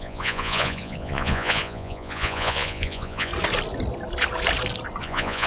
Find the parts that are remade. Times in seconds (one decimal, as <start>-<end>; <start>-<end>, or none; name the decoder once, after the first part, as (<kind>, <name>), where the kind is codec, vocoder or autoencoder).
0.0-3.3 (vocoder, Vocos); 5.0-5.5

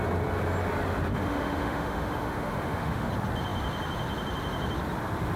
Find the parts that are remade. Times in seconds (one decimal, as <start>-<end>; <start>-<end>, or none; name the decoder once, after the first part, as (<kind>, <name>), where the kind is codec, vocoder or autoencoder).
1.1-3.1 (autoencoder, DAC-VAE)

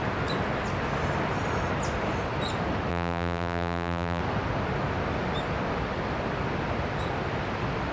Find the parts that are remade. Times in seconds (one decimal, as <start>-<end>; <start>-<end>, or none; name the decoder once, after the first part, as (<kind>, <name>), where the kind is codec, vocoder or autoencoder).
2.9-4.2 (vocoder, BigVGAN v2)